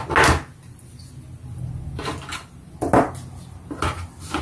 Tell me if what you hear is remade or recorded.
recorded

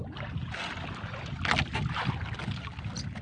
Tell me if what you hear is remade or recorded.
recorded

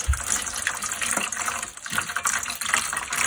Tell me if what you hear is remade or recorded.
recorded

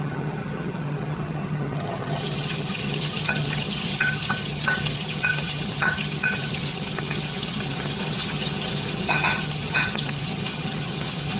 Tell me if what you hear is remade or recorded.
remade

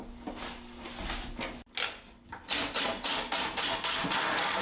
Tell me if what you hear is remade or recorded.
recorded